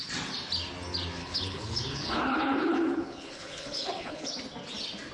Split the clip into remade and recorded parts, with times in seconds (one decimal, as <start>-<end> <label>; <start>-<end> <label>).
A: 0.0-1.2 recorded; 1.2-4.3 remade; 4.3-5.1 recorded

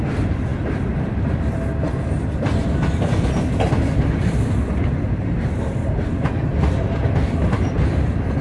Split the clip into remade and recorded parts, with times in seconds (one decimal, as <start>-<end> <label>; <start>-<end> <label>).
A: 0.0-8.4 recorded

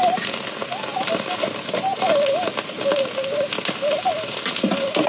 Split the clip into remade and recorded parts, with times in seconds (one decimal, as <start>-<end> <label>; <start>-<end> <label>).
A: 0.0-5.1 recorded

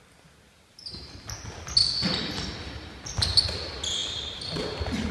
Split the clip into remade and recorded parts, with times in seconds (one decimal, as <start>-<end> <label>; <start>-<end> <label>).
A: 0.0-5.1 recorded

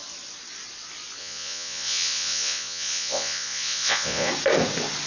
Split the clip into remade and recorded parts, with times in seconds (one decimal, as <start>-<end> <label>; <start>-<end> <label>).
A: 0.0-1.2 recorded; 1.2-4.3 remade; 4.3-5.1 recorded

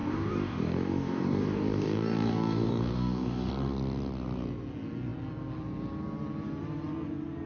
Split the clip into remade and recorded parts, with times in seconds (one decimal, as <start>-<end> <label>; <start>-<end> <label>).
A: 0.0-3.5 remade; 3.5-7.5 recorded

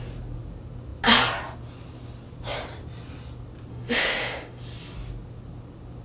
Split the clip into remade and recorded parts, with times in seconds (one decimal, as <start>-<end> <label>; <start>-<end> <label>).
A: 0.0-3.7 recorded; 3.7-4.6 remade; 4.6-6.0 recorded